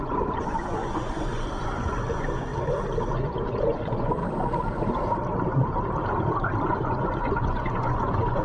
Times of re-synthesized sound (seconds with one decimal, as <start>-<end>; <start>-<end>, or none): 0.0-2.5; 3.1-4.2; 6.7-8.4